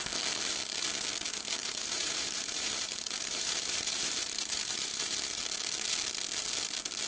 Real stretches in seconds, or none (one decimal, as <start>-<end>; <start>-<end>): 0.0-1.6; 5.4-7.1